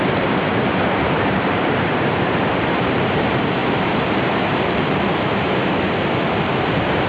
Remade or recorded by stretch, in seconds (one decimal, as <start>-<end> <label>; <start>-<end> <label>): 0.0-7.1 remade